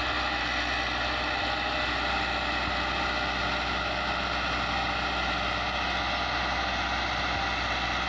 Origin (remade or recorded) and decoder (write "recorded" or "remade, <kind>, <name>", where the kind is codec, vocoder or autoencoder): recorded